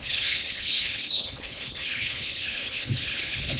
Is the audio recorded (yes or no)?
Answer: no